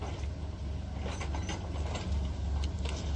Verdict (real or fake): real